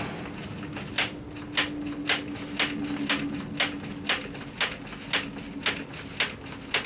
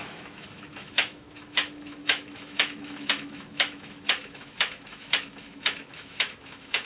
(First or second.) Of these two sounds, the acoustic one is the first